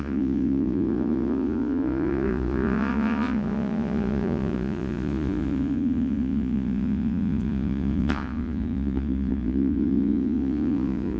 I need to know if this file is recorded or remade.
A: remade